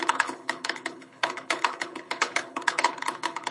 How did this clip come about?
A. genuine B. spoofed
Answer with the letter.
B